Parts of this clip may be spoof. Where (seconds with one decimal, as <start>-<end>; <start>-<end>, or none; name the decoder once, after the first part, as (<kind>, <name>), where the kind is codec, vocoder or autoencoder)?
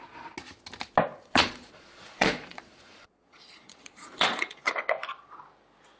1.1-4.7 (vocoder, Vocos)